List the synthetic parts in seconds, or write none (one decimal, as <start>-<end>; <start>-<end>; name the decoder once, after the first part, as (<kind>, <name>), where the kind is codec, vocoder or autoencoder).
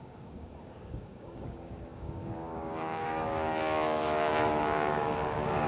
0.0-5.7 (codec, DAC)